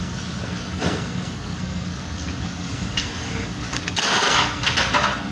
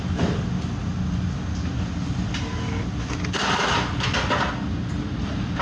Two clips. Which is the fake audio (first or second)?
first